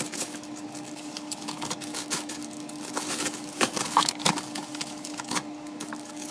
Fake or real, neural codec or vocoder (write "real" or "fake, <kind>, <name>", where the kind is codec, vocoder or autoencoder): fake, codec, DAC